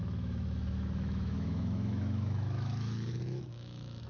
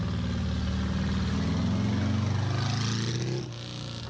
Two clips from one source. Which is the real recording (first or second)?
second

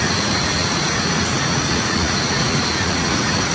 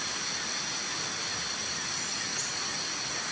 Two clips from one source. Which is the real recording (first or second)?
second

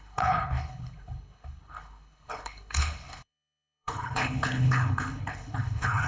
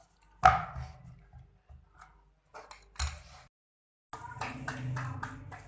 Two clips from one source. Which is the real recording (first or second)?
second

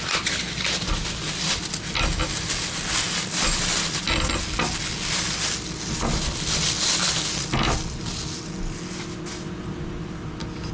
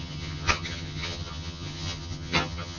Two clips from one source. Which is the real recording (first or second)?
first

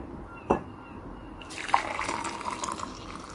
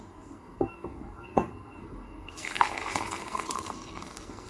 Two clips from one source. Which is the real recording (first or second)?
first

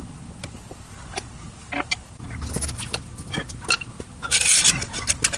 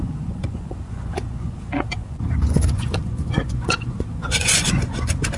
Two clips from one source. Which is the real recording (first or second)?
first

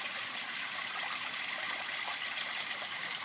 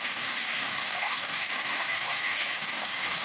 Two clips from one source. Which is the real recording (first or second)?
first